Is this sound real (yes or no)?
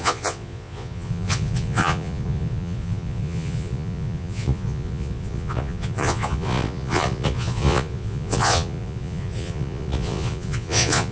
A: no